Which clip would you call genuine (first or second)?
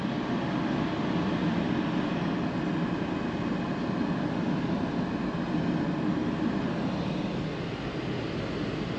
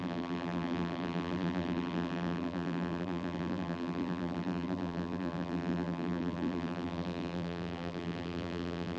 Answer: first